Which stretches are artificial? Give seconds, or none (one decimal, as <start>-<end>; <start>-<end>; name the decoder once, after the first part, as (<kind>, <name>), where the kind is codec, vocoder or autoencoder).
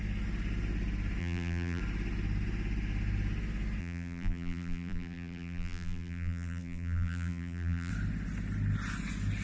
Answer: 1.2-1.8 (vocoder, BigVGAN v2); 3.8-7.9